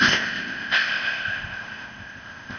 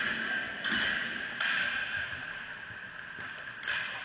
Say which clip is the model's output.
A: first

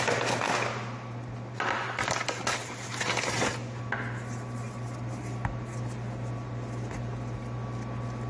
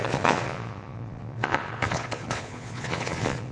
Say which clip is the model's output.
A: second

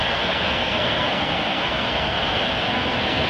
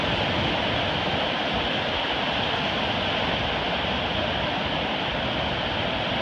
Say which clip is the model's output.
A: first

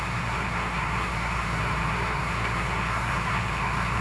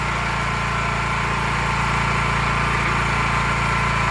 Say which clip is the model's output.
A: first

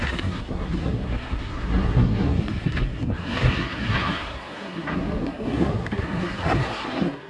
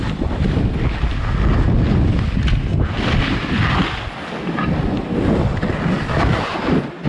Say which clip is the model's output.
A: first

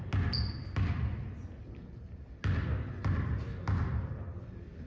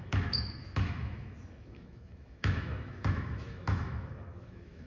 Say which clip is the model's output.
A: second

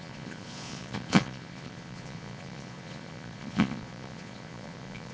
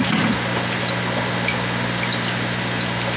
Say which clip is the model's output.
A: first